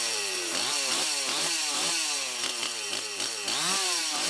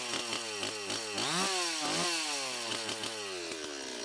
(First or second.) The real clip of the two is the second